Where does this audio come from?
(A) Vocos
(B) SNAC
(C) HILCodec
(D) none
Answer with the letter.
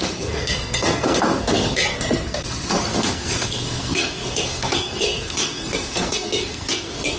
B